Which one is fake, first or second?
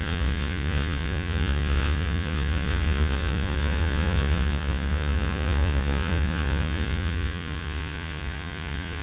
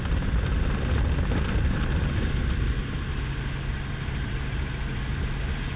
first